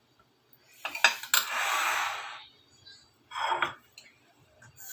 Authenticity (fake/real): real